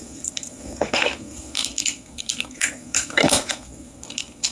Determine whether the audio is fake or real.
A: fake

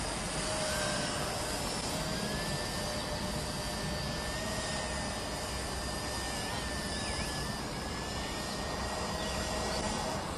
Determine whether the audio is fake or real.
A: real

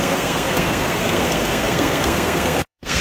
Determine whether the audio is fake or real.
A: fake